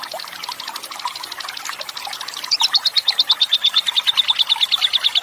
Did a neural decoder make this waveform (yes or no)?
no